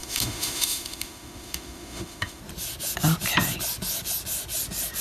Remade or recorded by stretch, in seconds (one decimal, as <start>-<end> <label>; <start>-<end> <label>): 0.0-2.4 remade; 2.4-5.0 recorded